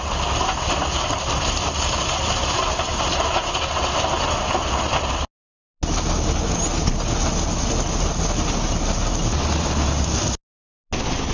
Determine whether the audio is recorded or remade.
recorded